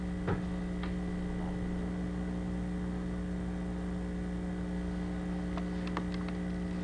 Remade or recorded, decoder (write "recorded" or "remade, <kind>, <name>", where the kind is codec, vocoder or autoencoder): recorded